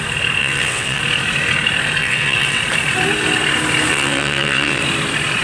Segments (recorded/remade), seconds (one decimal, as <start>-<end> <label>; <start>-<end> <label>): 0.0-0.4 recorded; 0.4-1.0 remade; 1.0-2.0 recorded; 2.0-2.6 remade; 2.6-3.9 recorded; 3.9-4.8 remade; 4.8-5.4 recorded